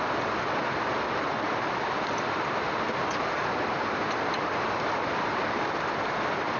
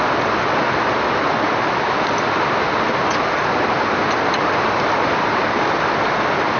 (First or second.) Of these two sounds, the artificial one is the first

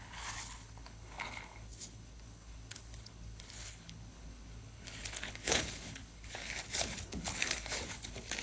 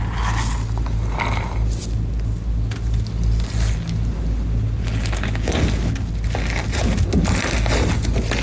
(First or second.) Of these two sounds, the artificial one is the first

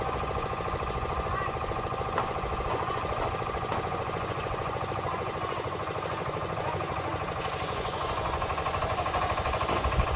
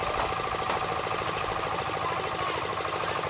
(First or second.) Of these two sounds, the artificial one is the first